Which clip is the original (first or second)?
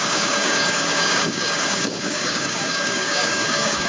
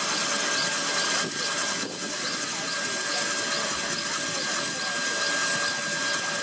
second